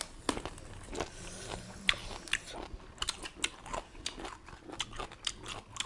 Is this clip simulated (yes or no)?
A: no